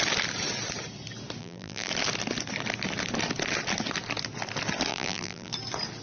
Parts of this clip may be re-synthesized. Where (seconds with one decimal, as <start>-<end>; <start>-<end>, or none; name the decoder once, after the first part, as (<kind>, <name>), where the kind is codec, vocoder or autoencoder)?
1.4-1.9 (vocoder, BigVGAN v2); 4.9-5.5